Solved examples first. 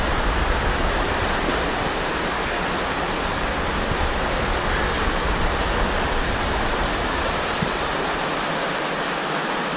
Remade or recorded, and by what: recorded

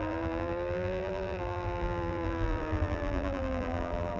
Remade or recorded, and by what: remade, vocoder, BigVGAN v2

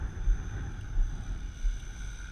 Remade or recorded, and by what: recorded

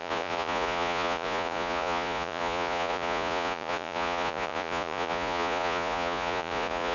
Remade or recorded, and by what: remade, vocoder, Vocos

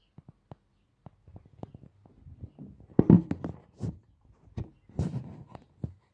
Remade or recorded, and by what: recorded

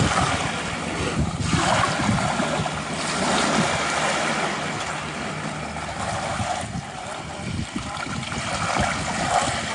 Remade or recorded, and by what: recorded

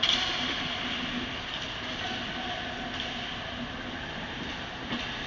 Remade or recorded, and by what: recorded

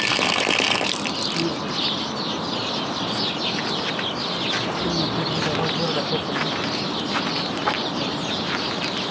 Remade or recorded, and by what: recorded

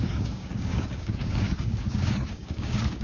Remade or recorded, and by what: remade, codec, DAC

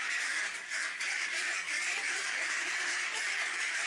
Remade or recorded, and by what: remade, codec, DAC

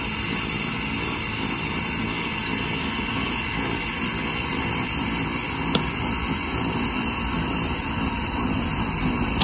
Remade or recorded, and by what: recorded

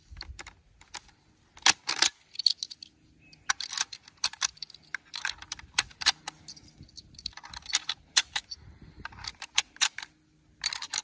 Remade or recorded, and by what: recorded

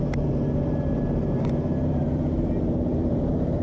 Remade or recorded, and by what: remade, vocoder, BigVGAN v2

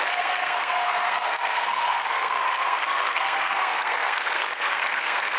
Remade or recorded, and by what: remade, codec, SNAC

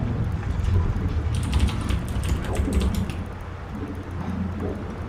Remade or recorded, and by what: recorded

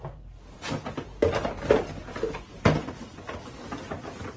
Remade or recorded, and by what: recorded